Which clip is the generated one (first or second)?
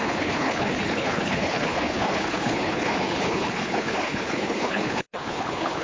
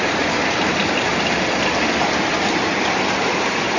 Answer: first